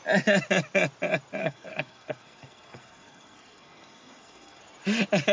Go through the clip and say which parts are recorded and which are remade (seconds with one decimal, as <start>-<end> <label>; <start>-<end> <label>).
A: 0.0-1.4 recorded; 1.4-4.6 remade; 4.6-5.3 recorded